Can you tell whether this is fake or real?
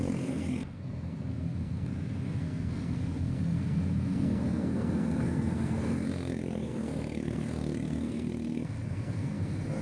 fake